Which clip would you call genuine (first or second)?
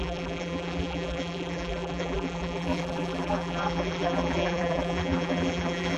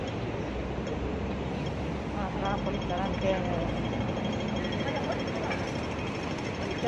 second